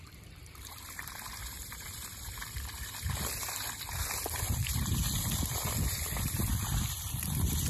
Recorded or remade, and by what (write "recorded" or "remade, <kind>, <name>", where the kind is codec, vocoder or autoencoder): remade, vocoder, BigVGAN v2